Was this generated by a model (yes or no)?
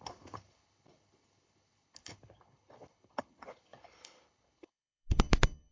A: yes